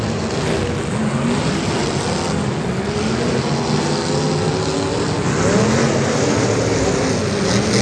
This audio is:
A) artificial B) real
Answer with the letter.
B